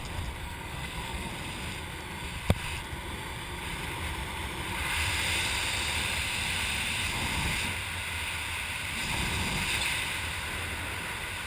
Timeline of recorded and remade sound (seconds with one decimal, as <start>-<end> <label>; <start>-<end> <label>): 0.0-0.4 recorded; 0.4-1.3 remade; 1.3-11.5 recorded